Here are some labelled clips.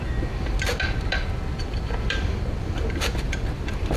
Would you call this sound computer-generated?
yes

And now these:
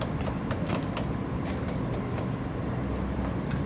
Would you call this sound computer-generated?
yes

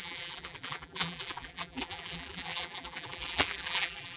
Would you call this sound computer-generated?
yes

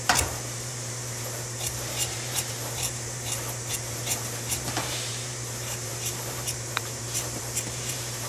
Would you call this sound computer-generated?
yes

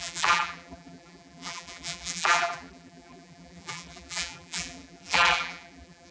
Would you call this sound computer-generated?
yes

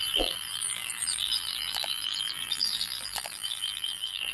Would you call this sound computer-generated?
yes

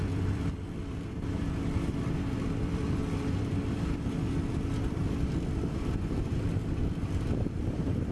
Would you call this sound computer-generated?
yes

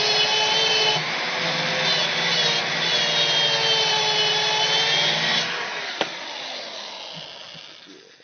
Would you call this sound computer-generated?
no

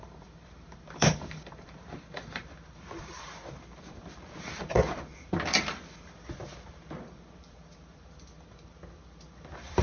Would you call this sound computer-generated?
yes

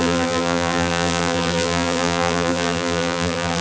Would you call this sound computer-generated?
yes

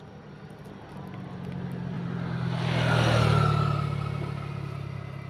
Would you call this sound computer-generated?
no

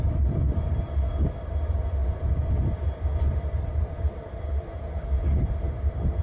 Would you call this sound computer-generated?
yes